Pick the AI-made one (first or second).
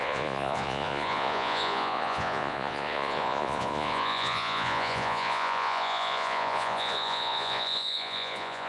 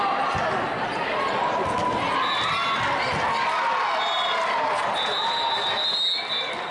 first